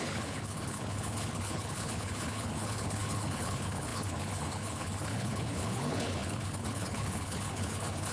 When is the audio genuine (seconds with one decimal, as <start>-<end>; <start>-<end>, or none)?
none